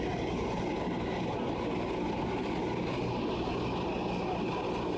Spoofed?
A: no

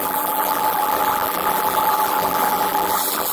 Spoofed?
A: yes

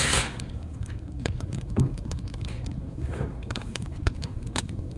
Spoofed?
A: yes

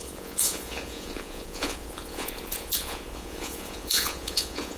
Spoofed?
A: yes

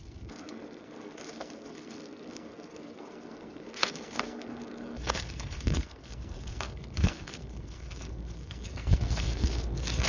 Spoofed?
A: yes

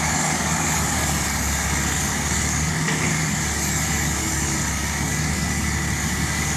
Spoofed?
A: yes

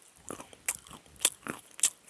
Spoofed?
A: no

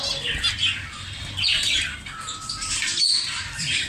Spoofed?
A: no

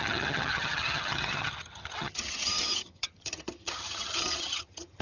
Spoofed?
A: yes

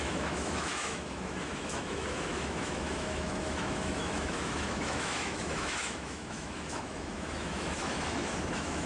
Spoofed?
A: yes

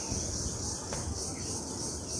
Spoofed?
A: no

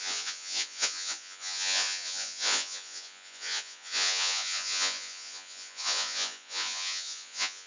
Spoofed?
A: yes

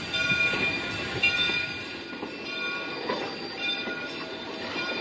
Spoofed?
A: no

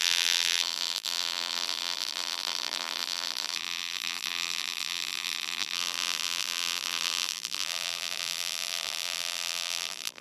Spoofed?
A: yes